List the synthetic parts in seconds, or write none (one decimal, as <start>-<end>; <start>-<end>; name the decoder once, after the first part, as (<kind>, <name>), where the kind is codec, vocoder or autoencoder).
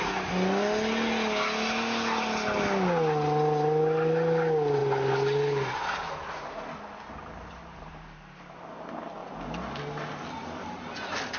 none